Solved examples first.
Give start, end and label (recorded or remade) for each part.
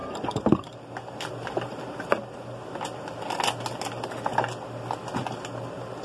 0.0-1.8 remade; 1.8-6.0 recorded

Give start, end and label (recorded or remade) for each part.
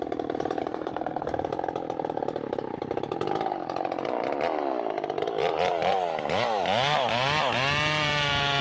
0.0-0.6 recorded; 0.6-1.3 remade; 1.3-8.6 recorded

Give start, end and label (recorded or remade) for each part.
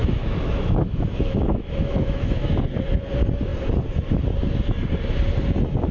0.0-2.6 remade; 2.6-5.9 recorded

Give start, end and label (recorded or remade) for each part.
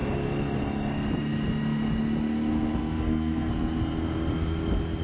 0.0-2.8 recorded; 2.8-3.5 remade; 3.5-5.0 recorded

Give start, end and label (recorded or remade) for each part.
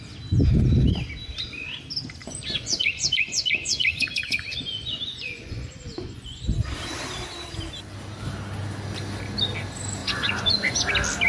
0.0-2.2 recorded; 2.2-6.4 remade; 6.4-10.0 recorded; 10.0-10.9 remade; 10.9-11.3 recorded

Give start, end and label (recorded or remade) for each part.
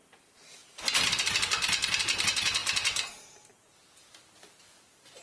0.0-5.2 recorded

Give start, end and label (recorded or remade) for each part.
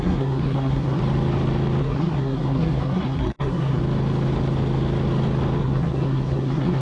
0.0-1.0 remade; 1.0-1.8 recorded; 1.8-3.8 remade; 3.8-5.6 recorded; 5.6-6.8 remade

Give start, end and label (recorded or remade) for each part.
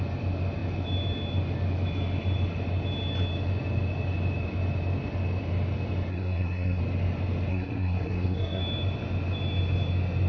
0.0-6.1 recorded; 6.1-6.8 remade; 6.8-7.5 recorded; 7.5-8.6 remade; 8.6-10.3 recorded